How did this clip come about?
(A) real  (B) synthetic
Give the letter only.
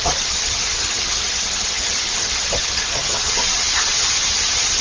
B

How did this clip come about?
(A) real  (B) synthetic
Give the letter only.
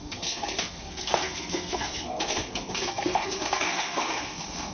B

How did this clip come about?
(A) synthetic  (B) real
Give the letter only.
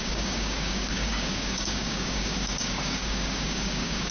A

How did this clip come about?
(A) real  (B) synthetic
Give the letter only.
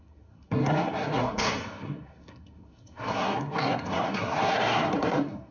B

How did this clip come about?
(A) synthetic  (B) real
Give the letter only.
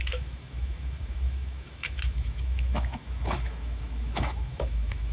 A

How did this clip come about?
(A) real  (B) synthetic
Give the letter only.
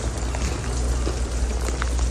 A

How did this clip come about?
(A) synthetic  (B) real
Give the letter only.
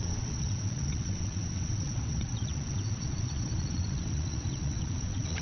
A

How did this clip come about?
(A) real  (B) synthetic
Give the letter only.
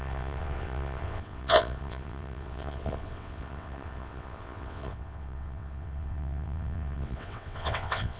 B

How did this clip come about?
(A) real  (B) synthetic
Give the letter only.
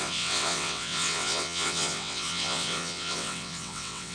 B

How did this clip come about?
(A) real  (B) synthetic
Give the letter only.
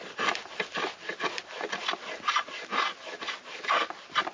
A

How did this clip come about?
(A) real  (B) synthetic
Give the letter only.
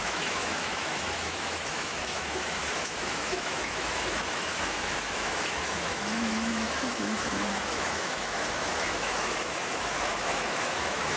B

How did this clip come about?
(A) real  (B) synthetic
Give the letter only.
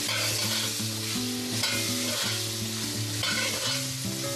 A